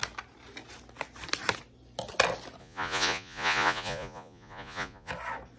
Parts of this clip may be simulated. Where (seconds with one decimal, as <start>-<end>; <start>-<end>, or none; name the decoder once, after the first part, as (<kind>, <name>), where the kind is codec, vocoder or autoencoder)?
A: 2.6-5.1 (vocoder, Vocos)